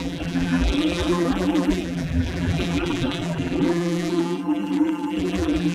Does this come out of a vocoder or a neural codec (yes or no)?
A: yes